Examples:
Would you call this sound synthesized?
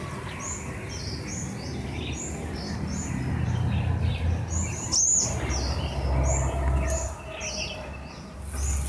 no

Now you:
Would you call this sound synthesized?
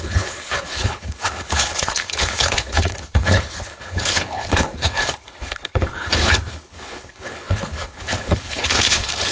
yes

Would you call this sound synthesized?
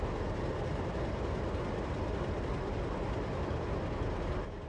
no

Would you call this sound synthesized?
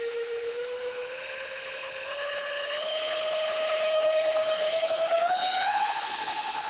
yes